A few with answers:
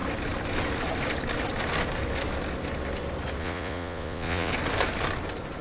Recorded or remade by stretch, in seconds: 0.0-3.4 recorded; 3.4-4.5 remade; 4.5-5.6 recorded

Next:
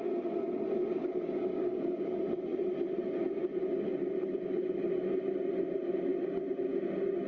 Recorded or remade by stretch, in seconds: 0.0-1.0 recorded; 1.0-1.8 remade; 1.8-7.3 recorded

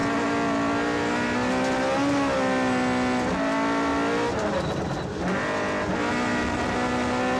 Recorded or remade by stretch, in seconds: 0.0-1.1 remade; 1.1-7.4 recorded

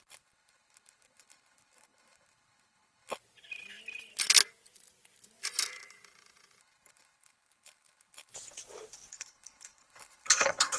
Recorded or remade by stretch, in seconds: 0.0-3.2 remade; 3.2-6.6 recorded; 6.6-8.3 remade; 8.3-9.1 recorded; 9.1-10.8 remade

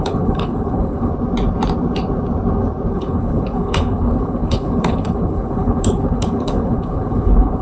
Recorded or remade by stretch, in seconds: 0.0-1.1 remade; 1.1-2.9 recorded; 2.9-7.6 remade

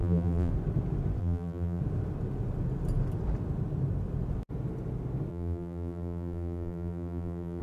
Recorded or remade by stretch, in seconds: 0.0-0.5 remade; 0.5-1.2 recorded; 1.2-1.8 remade; 1.8-5.3 recorded; 5.3-7.6 remade

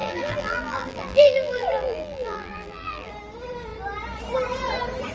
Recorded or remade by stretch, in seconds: 0.0-3.1 remade; 3.1-5.1 recorded